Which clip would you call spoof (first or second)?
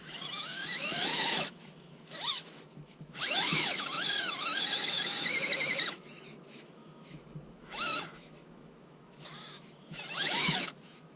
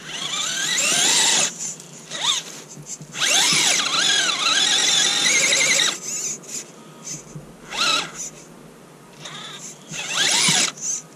first